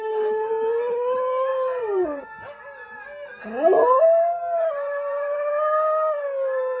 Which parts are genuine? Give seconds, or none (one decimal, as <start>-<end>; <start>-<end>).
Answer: 0.0-1.5; 2.2-4.0; 5.4-6.8